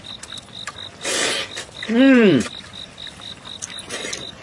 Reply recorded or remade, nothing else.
recorded